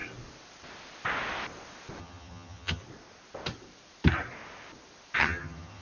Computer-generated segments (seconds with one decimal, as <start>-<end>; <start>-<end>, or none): 2.0-2.8; 5.2-5.8